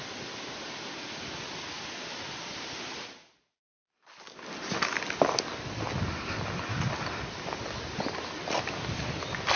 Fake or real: real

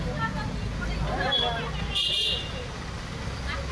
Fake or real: real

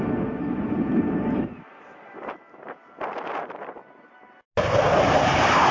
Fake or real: real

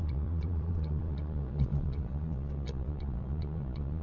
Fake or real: fake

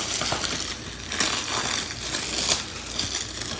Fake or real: real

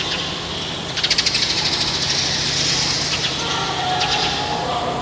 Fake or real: real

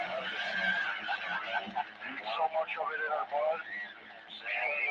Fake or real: real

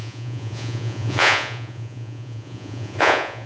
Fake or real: fake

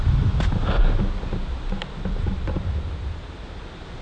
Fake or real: real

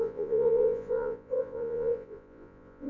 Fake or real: fake